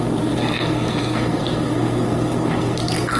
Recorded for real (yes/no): no